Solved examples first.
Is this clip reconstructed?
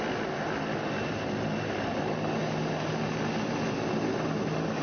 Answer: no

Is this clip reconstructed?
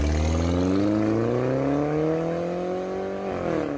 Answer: no